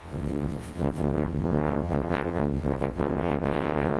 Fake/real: fake